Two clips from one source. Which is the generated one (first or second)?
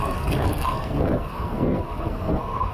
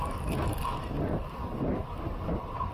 first